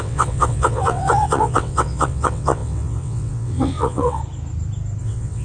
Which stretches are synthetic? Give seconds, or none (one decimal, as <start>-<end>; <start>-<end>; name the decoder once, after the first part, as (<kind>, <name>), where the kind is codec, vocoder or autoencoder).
0.0-4.2 (vocoder, WaveNeXt); 5.0-5.4